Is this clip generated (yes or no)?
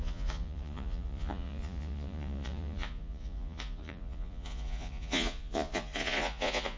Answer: yes